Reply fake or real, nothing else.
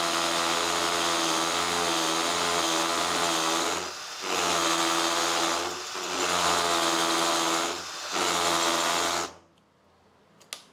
real